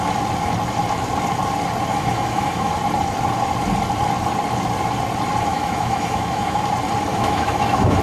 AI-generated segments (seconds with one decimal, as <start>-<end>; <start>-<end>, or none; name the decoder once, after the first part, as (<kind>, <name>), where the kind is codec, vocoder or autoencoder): 1.9-2.7 (autoencoder, DAC-VAE); 5.5-6.6; 7.1-8.0

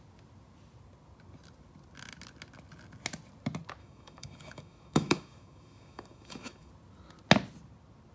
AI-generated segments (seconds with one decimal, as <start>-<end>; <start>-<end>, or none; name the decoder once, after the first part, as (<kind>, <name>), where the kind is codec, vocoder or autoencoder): 3.8-6.7 (autoencoder, DAC-VAE)

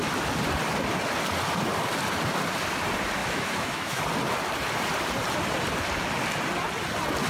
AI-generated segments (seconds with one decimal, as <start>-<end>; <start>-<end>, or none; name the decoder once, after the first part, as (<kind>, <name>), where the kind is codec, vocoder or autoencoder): 3.2-4.0 (autoencoder, DAC-VAE)

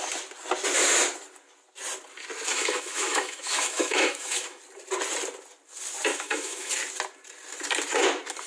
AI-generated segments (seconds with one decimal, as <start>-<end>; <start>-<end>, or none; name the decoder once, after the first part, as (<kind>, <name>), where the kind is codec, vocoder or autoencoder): 2.5-4.6 (autoencoder, DAC-VAE); 6.1-6.7

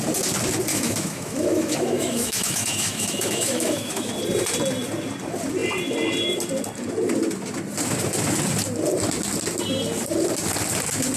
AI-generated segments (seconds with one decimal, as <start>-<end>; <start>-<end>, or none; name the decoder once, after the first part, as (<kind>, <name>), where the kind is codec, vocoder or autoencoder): 0.7-4.1 (autoencoder, DAC-VAE)

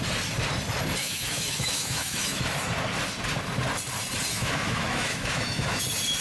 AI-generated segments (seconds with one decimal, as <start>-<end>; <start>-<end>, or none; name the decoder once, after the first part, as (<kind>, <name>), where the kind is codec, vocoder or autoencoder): 1.0-2.4 (autoencoder, DAC-VAE); 4.3-5.8